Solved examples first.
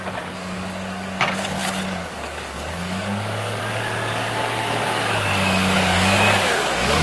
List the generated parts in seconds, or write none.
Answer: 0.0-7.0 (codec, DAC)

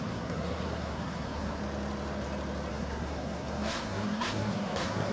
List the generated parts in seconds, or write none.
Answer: 0.0-1.6 (codec, SNAC); 2.7-5.1

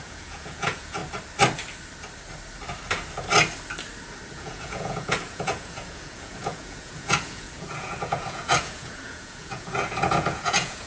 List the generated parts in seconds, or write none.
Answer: 0.0-1.0 (vocoder, Vocos); 4.3-10.9